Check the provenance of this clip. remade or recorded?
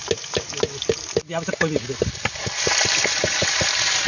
recorded